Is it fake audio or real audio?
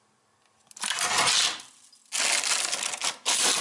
real